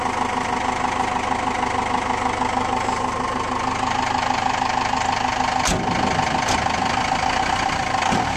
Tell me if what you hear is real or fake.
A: real